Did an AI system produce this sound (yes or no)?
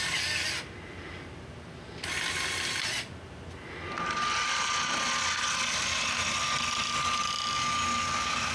no